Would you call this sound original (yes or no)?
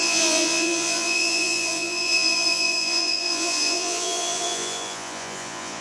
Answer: no